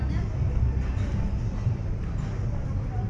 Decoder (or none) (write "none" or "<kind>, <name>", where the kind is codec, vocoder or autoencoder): none